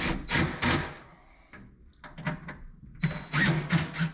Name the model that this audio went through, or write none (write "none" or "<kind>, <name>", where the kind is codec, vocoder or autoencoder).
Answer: none